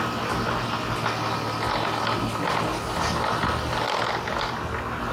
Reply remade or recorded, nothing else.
recorded